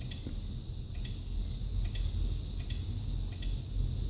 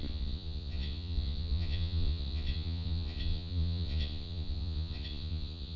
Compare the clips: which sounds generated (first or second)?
second